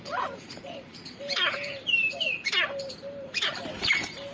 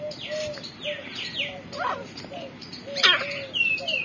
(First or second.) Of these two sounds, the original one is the second